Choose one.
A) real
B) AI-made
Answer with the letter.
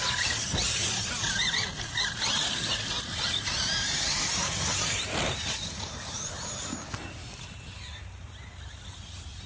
A